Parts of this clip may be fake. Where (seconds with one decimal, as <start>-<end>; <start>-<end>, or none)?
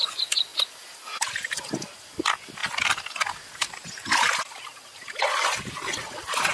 none